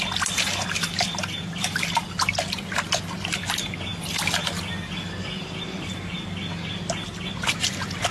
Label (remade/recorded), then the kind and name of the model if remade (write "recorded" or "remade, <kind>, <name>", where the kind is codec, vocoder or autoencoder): recorded